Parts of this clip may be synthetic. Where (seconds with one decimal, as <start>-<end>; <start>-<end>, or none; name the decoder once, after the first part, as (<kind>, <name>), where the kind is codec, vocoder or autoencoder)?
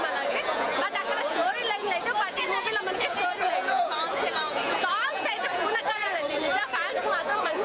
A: 0.0-7.6 (vocoder, Vocos)